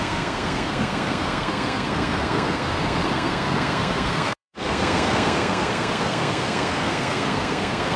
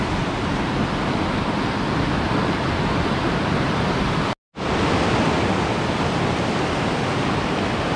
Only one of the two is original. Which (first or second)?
second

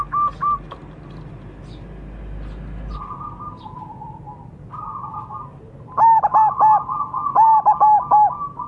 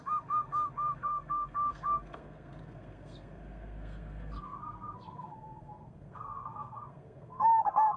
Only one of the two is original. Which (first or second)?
first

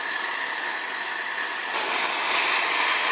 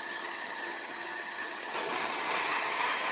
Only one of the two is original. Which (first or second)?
first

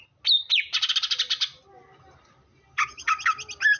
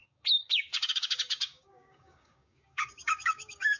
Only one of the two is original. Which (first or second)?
first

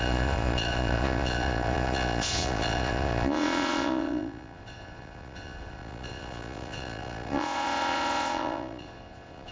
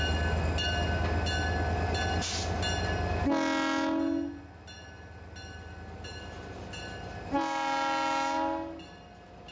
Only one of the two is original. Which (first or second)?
second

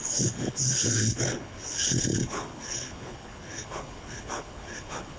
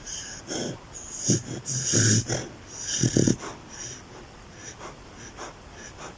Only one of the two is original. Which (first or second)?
second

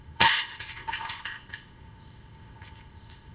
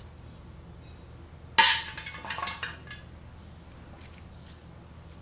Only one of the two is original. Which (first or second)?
second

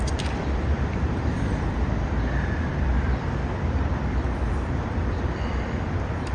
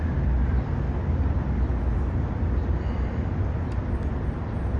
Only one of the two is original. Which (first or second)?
second